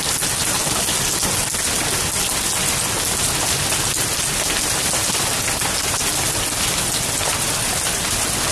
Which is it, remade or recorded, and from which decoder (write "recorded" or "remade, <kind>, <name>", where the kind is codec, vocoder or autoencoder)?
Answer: recorded